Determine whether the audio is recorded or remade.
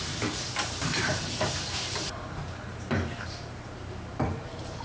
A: remade